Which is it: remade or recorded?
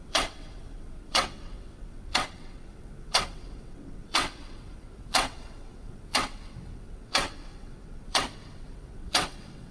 remade